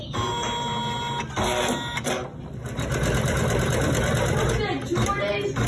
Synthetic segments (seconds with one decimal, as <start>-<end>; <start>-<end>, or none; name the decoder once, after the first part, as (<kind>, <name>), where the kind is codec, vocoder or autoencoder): none